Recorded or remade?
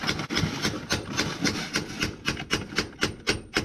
recorded